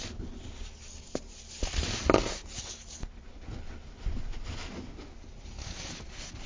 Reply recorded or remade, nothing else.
recorded